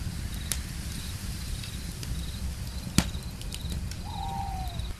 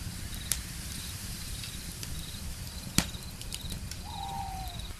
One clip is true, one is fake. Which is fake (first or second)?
second